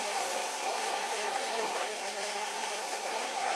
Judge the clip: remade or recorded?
remade